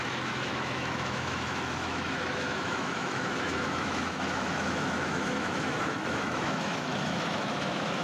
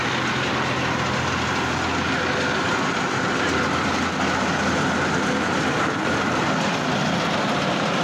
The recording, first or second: second